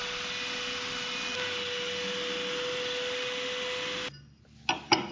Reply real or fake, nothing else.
real